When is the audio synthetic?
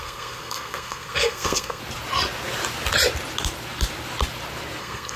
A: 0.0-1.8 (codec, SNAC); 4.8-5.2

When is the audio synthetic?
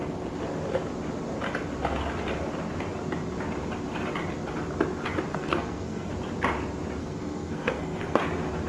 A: 5.3-6.1 (codec, SNAC); 7.0-8.2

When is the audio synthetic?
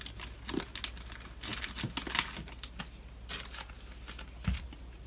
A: none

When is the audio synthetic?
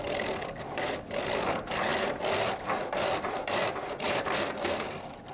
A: 0.0-1.3 (vocoder, BigVGAN v2); 1.9-5.3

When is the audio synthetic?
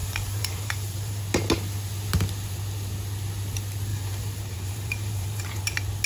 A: 0.0-1.2 (vocoder, BigVGAN v2); 3.9-5.6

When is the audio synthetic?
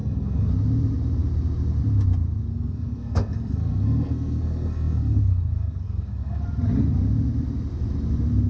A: 0.0-0.5 (codec, SNAC); 2.5-6.4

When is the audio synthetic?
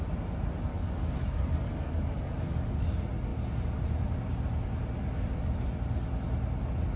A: 0.7-2.8 (codec, DAC)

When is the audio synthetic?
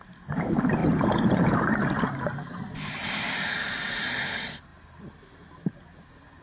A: 0.8-3.7 (vocoder, BigVGAN v2)